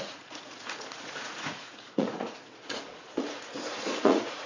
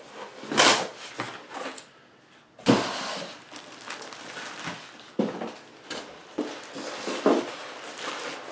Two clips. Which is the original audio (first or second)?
second